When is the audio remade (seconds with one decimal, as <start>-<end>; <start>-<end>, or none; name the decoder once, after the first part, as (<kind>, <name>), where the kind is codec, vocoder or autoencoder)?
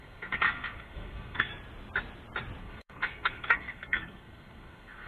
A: 0.0-1.5 (codec, SNAC); 2.6-5.1